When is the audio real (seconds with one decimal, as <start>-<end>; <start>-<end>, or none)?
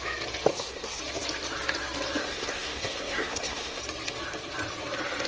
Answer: 0.0-0.5; 1.0-2.2; 3.8-5.3